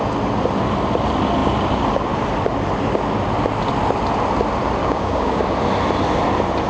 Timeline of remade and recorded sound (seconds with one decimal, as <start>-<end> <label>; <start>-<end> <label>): 0.0-4.8 recorded; 4.8-5.4 remade; 5.4-6.7 recorded